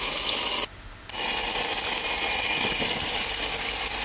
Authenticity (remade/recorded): recorded